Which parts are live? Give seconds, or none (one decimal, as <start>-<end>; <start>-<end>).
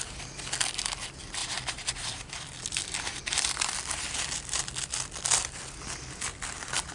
0.0-1.4; 3.8-6.9